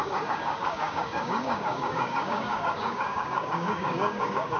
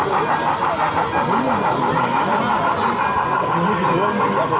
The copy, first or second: first